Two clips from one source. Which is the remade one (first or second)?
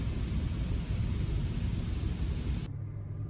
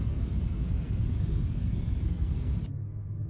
second